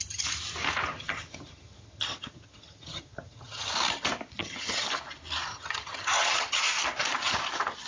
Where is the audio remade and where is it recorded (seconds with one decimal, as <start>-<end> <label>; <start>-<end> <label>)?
0.0-0.9 recorded; 0.9-3.7 remade; 3.7-4.4 recorded; 4.4-4.9 remade; 4.9-5.5 recorded; 5.5-6.6 remade; 6.6-7.9 recorded